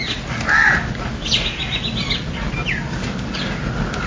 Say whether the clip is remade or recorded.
recorded